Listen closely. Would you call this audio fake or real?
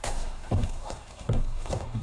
fake